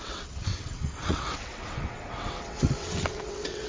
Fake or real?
fake